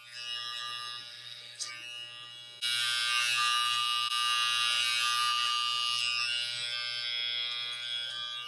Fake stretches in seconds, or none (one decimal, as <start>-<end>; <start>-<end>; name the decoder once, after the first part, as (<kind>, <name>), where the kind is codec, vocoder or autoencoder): 1.1-1.7 (codec, SNAC)